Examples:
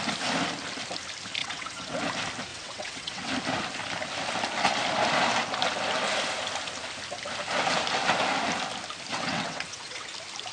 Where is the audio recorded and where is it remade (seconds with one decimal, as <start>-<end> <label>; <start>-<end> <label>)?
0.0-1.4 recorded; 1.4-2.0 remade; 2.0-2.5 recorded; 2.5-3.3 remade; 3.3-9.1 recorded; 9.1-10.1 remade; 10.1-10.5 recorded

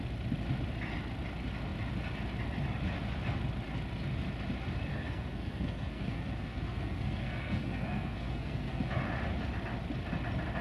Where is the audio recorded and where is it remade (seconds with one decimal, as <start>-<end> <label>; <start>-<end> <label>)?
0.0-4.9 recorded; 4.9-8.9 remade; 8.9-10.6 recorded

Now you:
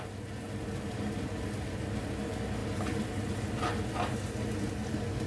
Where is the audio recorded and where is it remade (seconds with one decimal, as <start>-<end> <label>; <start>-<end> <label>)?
0.0-5.3 recorded

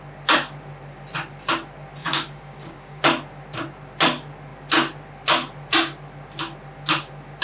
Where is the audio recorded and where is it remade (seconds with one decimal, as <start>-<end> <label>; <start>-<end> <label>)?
0.0-2.0 recorded; 2.0-3.0 remade; 3.0-7.4 recorded

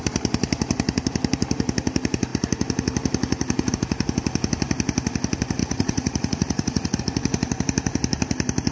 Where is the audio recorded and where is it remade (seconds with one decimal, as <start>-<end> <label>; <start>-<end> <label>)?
0.0-5.6 recorded; 5.6-7.0 remade; 7.0-8.7 recorded

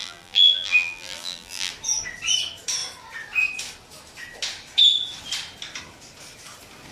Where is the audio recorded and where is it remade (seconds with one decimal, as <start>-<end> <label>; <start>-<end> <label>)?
0.0-1.7 remade; 1.7-6.9 recorded

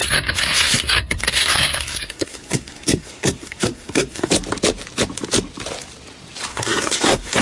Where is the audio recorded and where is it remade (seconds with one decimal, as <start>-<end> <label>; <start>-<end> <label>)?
0.0-4.3 remade; 4.3-6.5 recorded; 6.5-7.4 remade